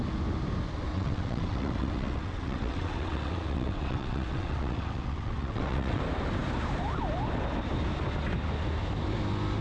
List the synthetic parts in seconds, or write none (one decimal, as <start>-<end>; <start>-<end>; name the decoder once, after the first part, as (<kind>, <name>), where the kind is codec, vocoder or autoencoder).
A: 0.9-6.0 (vocoder, WaveNeXt)